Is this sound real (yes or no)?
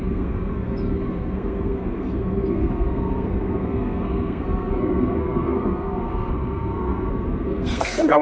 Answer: no